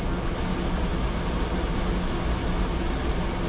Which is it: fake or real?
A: real